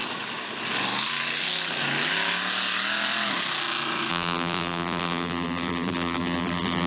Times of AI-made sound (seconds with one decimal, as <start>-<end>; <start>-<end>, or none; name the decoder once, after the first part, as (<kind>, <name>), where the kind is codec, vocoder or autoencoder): 4.1-6.9 (vocoder, BigVGAN v2)